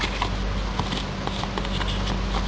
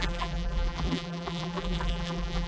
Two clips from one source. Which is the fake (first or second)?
second